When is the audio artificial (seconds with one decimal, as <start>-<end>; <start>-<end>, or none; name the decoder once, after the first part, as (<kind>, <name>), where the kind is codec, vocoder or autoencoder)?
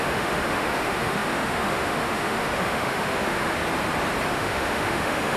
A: 0.0-3.6 (autoencoder, DAC-VAE); 4.3-5.4